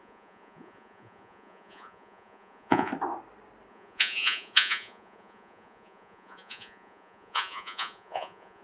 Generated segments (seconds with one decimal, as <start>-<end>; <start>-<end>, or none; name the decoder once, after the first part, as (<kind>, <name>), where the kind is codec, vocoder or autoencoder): 0.0-2.9 (vocoder, Vocos); 3.7-8.6

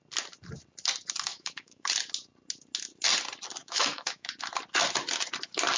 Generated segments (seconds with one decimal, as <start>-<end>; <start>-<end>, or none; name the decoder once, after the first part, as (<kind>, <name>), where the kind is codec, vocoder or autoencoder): 1.3-1.9 (autoencoder, DAC-VAE); 3.6-4.3

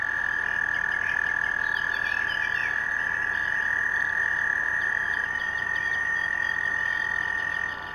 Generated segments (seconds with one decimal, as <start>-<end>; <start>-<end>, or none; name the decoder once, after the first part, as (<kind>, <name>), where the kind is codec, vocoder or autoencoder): 2.6-3.5 (vocoder, BigVGAN v2); 4.5-6.7

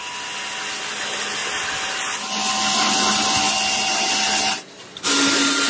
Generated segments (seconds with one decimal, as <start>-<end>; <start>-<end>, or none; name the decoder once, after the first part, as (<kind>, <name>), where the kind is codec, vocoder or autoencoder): none

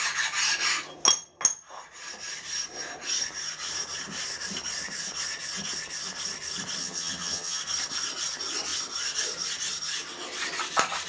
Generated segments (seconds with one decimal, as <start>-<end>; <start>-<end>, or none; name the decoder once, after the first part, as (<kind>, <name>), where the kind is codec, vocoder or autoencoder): 6.8-7.6 (vocoder, HiFi-GAN)